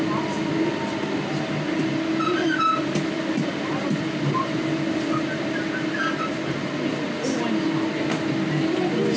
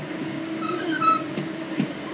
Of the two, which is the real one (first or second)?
first